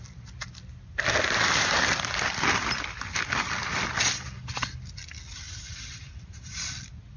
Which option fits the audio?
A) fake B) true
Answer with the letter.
B